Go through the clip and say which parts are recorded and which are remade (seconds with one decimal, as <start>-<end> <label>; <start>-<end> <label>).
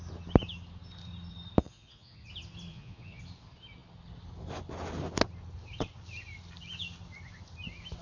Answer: 0.0-1.6 recorded; 1.6-2.3 remade; 2.3-2.7 recorded; 2.7-3.2 remade; 3.2-8.0 recorded